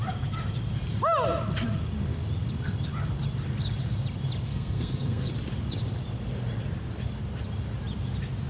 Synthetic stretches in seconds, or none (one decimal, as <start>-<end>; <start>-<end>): 4.5-5.3